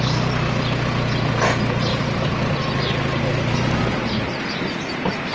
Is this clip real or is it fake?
real